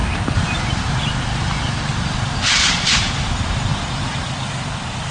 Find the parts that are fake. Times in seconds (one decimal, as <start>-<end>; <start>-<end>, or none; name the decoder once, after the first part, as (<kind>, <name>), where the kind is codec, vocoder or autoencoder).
0.0-3.1 (vocoder, BigVGAN v2)

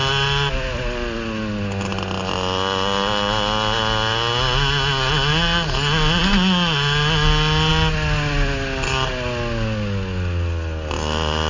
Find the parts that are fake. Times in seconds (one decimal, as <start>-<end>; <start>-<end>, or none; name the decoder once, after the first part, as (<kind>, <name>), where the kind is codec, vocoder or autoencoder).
none

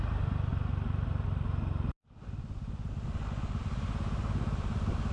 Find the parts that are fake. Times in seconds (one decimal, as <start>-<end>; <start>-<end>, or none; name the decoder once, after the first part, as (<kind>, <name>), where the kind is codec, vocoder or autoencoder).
none

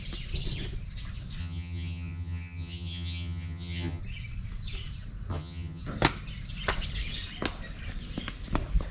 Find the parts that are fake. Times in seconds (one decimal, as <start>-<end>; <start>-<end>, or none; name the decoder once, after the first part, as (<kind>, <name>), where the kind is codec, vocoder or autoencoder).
1.4-4.0 (vocoder, HiFi-GAN); 5.3-5.8

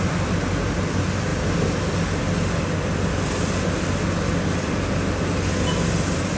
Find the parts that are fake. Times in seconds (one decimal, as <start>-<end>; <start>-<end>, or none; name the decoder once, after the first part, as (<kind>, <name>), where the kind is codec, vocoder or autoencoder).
none

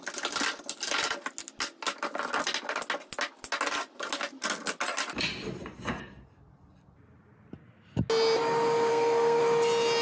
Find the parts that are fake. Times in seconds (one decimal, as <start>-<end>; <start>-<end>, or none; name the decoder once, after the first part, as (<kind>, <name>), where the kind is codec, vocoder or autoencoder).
8.9-9.4 (codec, SNAC)

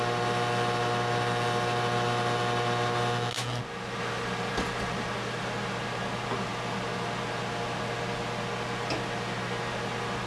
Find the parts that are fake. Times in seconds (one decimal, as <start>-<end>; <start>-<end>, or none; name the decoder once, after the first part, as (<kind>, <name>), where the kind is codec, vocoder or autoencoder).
none